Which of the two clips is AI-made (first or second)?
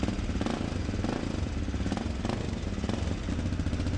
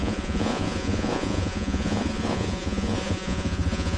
second